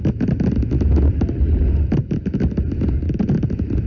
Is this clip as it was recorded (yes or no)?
yes